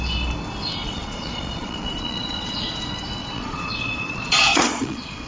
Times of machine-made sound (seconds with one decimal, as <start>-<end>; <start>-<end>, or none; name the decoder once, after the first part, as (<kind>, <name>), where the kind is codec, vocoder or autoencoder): 0.8-2.8 (vocoder, Vocos); 3.2-5.3